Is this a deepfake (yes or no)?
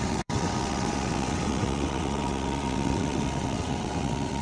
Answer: yes